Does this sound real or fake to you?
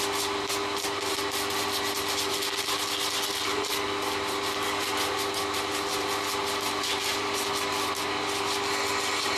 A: real